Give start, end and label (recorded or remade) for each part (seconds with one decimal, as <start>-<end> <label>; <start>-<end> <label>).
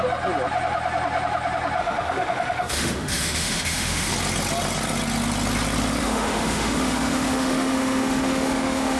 0.0-1.8 recorded; 1.8-4.1 remade; 4.1-6.0 recorded; 6.0-9.0 remade